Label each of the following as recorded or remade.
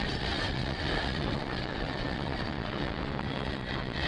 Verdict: remade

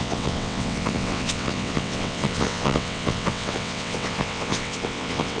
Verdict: remade